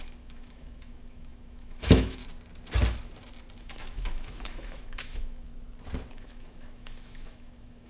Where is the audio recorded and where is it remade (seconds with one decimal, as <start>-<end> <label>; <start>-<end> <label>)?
0.0-2.2 remade; 2.2-3.6 recorded; 3.6-5.5 remade; 5.5-6.1 recorded; 6.1-7.9 remade